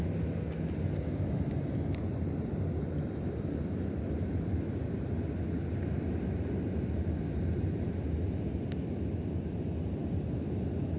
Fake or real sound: real